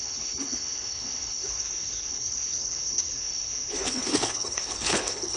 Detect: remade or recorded remade